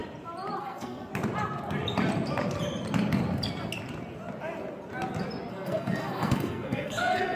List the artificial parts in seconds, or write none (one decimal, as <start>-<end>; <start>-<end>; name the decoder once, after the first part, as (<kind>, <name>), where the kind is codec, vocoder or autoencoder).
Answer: 0.6-1.1 (codec, SNAC); 5.5-7.4